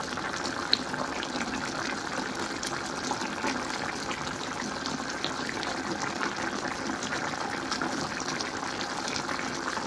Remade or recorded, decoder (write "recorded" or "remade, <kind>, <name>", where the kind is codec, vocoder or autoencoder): recorded